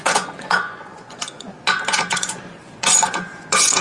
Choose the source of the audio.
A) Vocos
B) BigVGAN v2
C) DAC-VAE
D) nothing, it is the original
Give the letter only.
A